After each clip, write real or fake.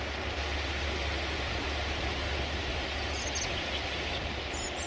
real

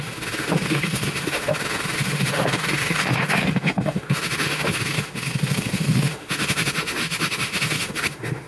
fake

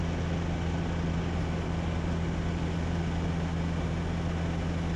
real